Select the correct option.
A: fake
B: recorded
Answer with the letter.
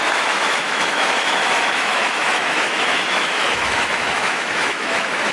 A